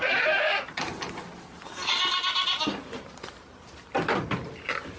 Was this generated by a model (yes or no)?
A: no